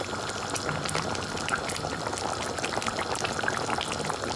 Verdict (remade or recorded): recorded